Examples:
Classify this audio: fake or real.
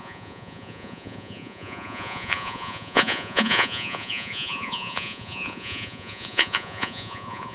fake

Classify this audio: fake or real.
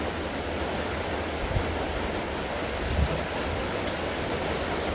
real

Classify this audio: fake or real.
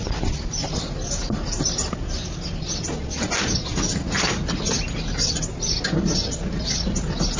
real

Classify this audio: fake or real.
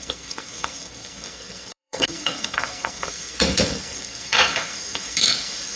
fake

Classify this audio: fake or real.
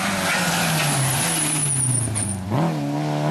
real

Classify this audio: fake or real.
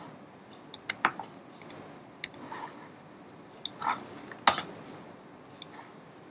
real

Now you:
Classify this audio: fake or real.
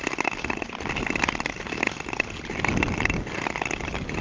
real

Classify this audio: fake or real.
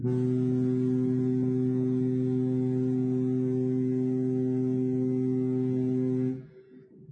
real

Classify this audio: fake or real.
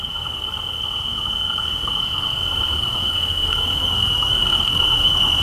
fake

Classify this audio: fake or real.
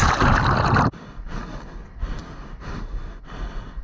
real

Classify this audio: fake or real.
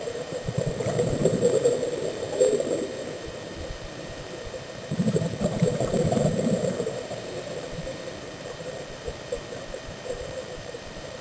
fake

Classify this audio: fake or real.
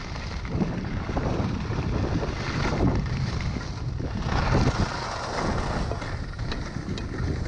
real